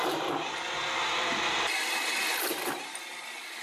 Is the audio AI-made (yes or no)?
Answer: no